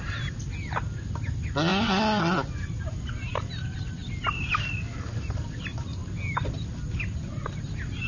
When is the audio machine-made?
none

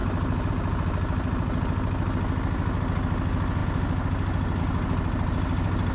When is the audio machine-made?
none

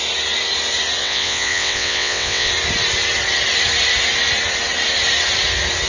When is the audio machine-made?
1.0-2.5 (vocoder, WaveNeXt)

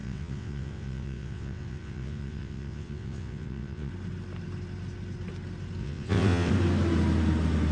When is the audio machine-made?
0.0-3.9 (vocoder, WaveNeXt); 5.8-6.5